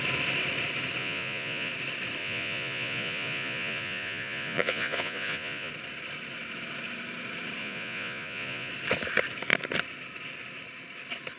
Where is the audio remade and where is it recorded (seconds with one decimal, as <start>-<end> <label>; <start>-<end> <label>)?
0.0-1.0 recorded; 1.0-1.7 remade; 1.7-2.2 recorded; 2.2-5.7 remade; 5.7-7.6 recorded; 7.6-8.7 remade; 8.7-11.4 recorded